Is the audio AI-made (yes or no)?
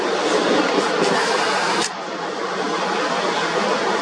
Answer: no